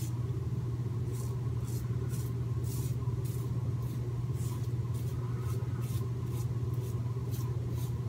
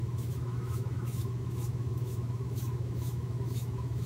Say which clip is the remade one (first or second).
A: second